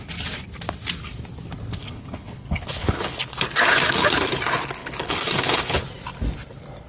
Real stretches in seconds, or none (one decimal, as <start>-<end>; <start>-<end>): 0.0-1.8; 3.2-4.8; 5.8-6.9